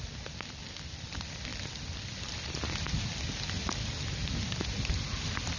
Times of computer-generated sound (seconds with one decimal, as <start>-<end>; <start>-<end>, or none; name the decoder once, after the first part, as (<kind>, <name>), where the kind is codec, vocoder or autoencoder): 0.0-5.6 (vocoder, BigVGAN v2)